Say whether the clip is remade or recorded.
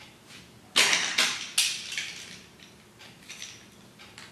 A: recorded